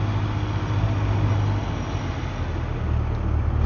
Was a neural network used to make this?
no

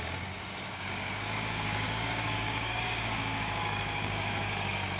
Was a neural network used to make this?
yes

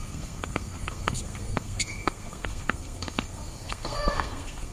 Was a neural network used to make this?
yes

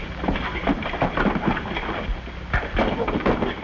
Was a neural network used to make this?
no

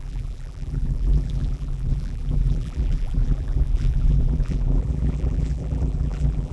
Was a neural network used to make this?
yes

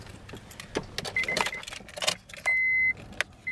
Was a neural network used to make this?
no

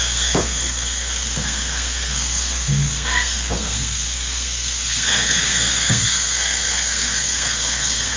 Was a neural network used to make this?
yes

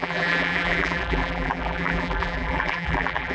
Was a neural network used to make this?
yes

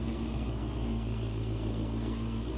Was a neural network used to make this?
yes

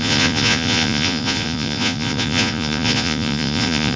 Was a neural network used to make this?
yes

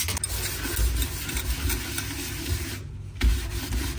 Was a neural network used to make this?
no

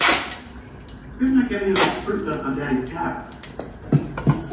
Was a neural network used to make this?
no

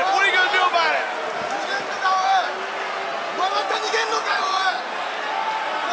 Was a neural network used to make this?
no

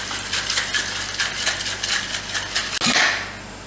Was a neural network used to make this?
no